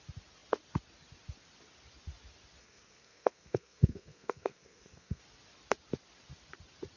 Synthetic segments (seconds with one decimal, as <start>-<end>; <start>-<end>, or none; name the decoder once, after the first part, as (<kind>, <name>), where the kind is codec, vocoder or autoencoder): 2.6-5.2 (codec, SNAC)